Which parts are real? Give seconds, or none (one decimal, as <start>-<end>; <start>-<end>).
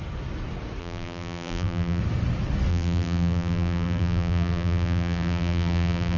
0.0-0.8; 2.0-2.7